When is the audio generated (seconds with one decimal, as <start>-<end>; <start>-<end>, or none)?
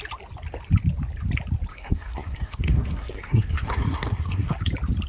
1.7-4.6